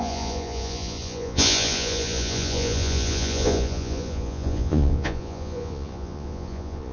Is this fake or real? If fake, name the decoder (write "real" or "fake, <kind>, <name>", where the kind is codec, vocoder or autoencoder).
fake, vocoder, Vocos